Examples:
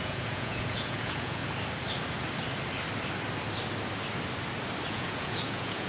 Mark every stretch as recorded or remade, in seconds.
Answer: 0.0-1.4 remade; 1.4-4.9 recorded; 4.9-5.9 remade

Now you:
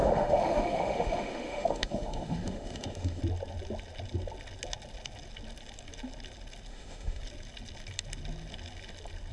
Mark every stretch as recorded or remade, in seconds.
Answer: 0.0-3.2 remade; 3.2-6.7 recorded; 6.7-7.2 remade; 7.2-9.3 recorded

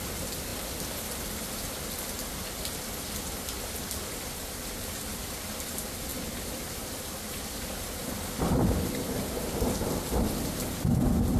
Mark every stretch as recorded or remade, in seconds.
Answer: 0.0-11.4 recorded

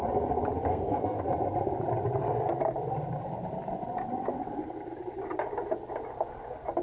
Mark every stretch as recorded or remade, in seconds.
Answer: 0.0-0.7 recorded; 0.7-1.2 remade; 1.2-6.8 recorded

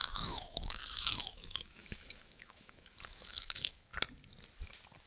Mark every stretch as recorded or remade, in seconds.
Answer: 0.0-3.9 remade; 3.9-5.1 recorded

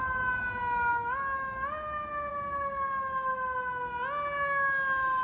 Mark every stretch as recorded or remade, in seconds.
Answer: 0.0-5.2 recorded